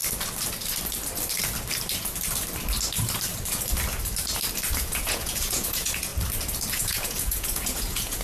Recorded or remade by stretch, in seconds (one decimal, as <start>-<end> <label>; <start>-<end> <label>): 0.0-4.8 recorded; 4.8-6.1 remade; 6.1-6.7 recorded; 6.7-8.2 remade